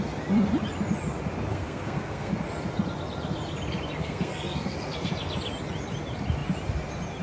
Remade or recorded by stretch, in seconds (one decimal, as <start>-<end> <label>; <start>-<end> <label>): 0.0-1.5 recorded; 1.5-2.3 remade; 2.3-4.0 recorded; 4.0-5.1 remade; 5.1-7.2 recorded